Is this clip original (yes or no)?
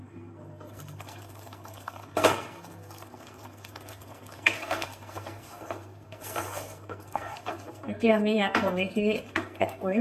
no